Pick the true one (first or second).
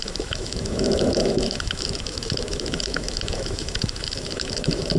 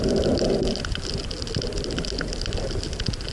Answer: second